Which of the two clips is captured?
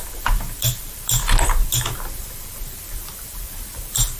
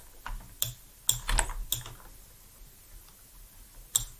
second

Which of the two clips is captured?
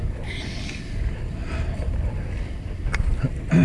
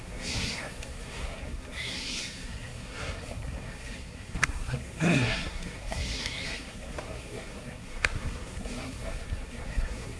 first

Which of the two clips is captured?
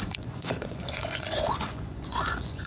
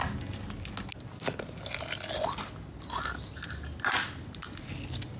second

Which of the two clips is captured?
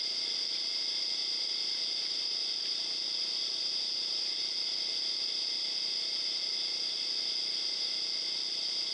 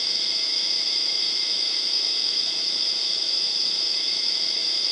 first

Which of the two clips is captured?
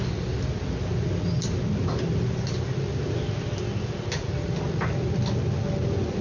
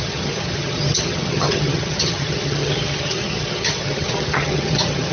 first